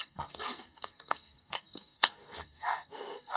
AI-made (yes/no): yes